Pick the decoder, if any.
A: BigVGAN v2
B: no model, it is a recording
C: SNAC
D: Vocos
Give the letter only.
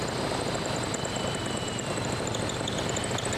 A